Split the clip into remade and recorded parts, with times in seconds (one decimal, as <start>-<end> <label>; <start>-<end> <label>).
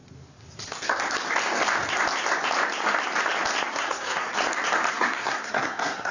0.0-3.7 recorded; 3.7-4.3 remade; 4.3-4.9 recorded; 4.9-6.1 remade